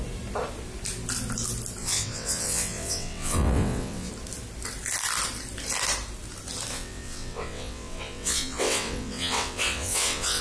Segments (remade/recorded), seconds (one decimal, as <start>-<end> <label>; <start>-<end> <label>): 0.0-1.8 recorded; 1.8-4.1 remade; 4.1-6.7 recorded; 6.7-10.4 remade